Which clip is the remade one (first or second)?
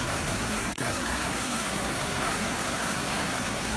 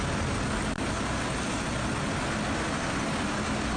first